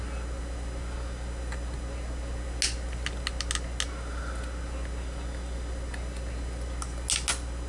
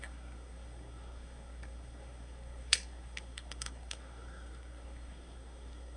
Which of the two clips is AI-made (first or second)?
second